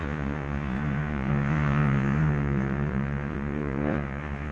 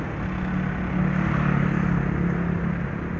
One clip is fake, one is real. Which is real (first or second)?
second